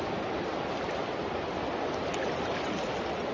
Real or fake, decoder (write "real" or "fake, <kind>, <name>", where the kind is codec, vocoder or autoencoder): real